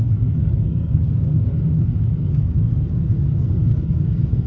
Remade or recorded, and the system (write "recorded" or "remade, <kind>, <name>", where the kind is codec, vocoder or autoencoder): remade, codec, SNAC